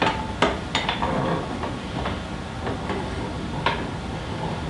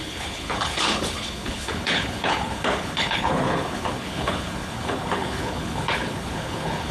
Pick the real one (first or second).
first